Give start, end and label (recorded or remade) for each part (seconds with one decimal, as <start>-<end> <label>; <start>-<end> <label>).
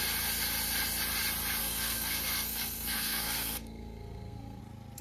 0.0-1.6 recorded; 1.6-4.6 remade; 4.6-5.0 recorded